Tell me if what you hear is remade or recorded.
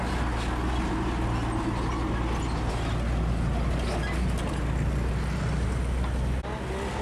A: recorded